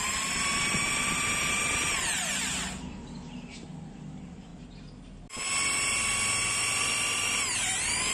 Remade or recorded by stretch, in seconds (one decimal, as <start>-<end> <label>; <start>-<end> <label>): 0.0-4.5 remade; 4.5-6.8 recorded; 6.8-8.1 remade